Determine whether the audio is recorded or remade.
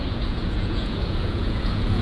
remade